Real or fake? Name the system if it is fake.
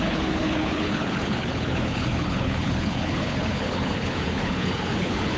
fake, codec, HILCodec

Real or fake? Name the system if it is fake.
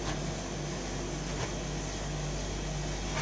real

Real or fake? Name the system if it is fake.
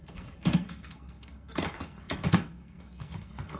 fake, codec, SNAC